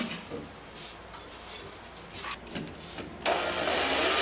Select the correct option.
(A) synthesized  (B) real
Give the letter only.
B